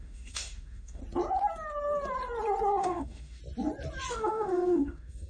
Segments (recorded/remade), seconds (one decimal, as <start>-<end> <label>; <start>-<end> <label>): 0.0-1.0 remade; 1.0-2.8 recorded; 2.8-3.4 remade; 3.4-4.1 recorded; 4.1-5.3 remade